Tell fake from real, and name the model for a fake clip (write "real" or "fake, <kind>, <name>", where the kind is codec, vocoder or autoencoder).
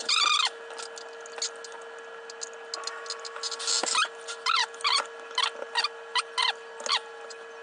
real